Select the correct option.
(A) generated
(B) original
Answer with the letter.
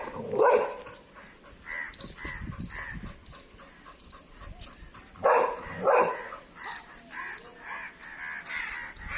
B